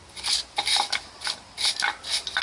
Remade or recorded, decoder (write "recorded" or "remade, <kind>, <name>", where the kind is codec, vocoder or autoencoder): recorded